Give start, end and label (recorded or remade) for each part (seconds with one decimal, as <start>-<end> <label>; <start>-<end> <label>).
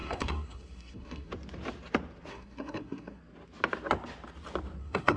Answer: 0.0-1.3 remade; 1.3-2.3 recorded; 2.3-3.2 remade; 3.2-4.8 recorded; 4.8-5.2 remade